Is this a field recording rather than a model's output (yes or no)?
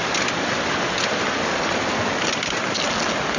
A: yes